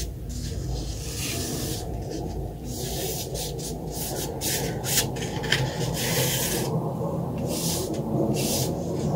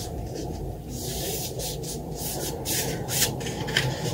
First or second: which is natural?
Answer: first